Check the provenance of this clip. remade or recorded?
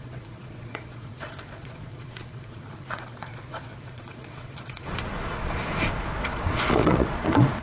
remade